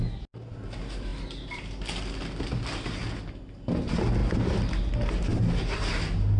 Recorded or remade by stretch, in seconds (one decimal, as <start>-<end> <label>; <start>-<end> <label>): 0.0-6.4 recorded